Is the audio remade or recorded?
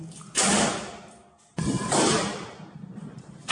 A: recorded